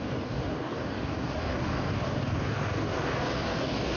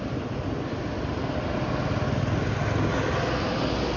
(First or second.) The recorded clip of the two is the second